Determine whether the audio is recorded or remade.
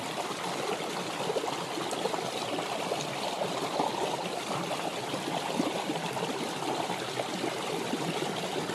recorded